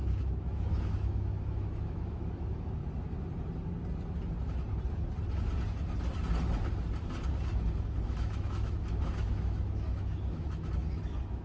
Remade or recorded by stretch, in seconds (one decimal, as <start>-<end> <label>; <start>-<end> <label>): 0.0-2.8 remade; 2.8-7.3 recorded; 7.3-11.4 remade